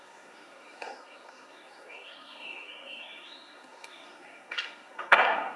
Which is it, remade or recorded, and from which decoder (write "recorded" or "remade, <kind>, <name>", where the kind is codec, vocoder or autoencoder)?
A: remade, codec, SNAC